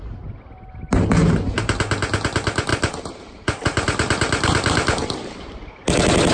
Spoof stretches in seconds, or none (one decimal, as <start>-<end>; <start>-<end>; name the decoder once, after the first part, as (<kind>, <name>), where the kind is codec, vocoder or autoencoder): 2.7-5.7 (vocoder, BigVGAN v2)